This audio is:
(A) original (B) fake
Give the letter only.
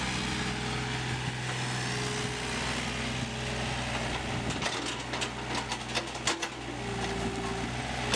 A